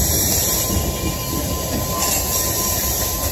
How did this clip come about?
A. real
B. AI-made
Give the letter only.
A